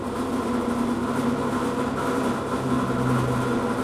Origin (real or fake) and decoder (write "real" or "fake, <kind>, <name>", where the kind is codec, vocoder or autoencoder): real